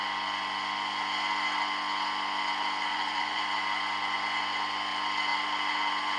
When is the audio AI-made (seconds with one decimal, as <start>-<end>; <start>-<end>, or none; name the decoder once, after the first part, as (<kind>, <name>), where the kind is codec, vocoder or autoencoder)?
2.9-3.4 (vocoder, Vocos)